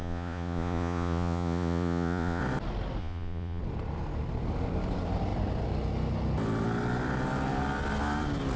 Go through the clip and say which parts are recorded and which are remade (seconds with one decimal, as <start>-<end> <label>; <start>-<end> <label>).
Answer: 0.0-2.4 remade; 2.4-3.0 recorded; 3.0-3.6 remade; 3.6-8.6 recorded